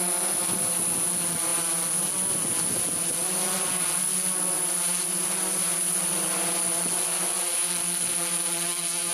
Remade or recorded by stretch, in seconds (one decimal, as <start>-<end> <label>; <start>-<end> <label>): 0.0-9.1 recorded